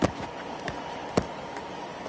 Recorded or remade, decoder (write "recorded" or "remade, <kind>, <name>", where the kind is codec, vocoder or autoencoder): recorded